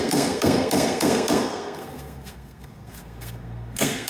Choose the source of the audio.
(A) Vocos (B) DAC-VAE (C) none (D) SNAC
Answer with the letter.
D